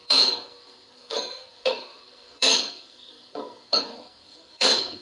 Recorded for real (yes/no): no